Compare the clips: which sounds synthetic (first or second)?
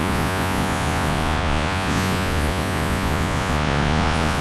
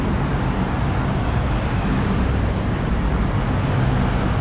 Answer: first